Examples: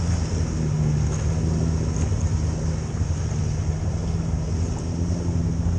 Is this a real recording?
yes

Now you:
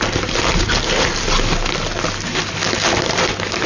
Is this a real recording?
yes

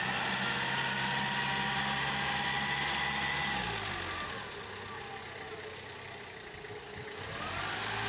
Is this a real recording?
yes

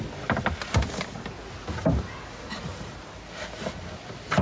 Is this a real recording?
yes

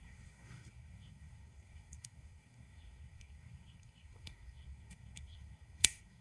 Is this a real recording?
no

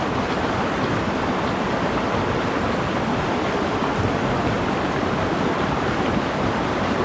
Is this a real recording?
yes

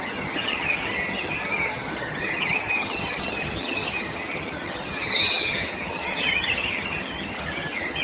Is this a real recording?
no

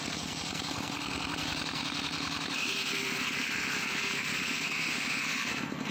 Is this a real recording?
no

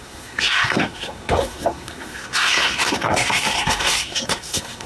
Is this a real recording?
no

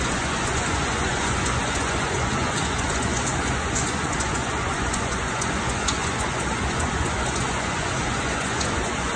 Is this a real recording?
no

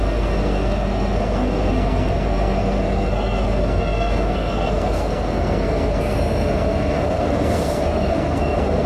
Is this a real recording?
no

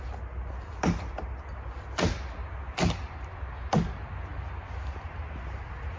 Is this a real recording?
yes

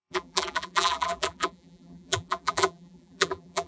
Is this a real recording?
no